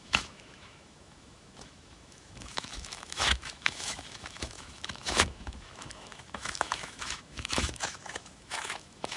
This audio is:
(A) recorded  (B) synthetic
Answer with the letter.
B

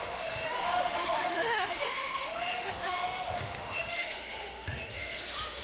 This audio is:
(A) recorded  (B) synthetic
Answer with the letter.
B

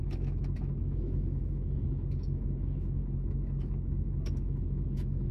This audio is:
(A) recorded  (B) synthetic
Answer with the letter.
B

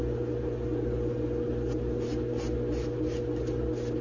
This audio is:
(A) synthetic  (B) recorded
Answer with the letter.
B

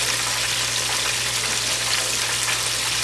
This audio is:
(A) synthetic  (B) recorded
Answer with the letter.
B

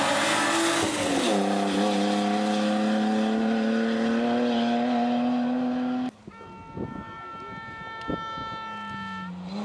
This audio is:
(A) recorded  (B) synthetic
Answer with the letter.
A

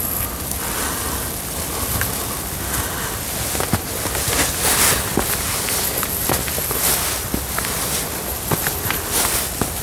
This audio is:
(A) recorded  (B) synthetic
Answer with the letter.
A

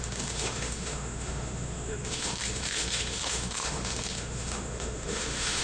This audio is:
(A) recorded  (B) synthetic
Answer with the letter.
B